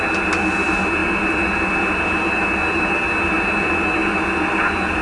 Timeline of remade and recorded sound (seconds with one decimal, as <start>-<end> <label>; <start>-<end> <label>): 0.0-5.0 recorded